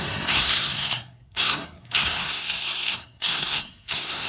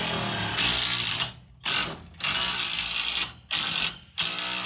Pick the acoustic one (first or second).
second